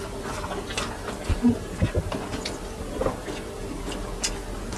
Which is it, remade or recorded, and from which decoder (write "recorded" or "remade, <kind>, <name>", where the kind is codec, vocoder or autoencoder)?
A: recorded